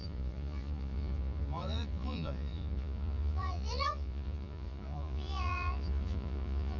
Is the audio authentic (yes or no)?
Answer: no